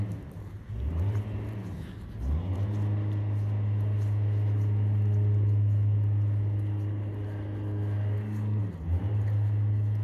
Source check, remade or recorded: recorded